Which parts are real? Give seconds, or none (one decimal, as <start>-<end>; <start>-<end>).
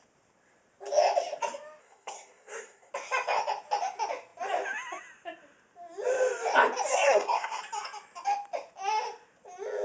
0.0-1.8; 2.9-6.9; 7.6-9.8